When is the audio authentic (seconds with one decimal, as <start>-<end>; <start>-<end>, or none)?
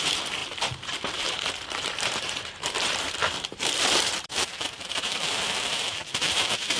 none